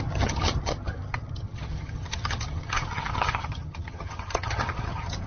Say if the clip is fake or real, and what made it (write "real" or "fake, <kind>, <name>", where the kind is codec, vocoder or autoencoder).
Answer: fake, vocoder, HiFi-GAN